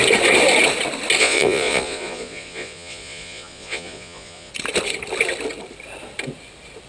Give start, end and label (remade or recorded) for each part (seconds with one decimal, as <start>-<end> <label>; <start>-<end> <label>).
0.0-1.2 recorded; 1.2-4.5 remade; 4.5-6.9 recorded